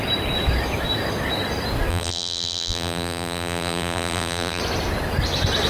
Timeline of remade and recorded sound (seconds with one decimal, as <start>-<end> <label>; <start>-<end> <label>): 0.0-1.9 recorded; 1.9-4.6 remade; 4.6-5.7 recorded